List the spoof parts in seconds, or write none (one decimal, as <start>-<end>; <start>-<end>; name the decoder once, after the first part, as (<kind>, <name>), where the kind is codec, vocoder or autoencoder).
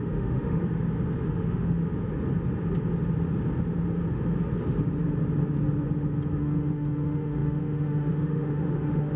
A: 0.0-0.6 (autoencoder, DAC-VAE); 1.2-1.8; 6.4-9.2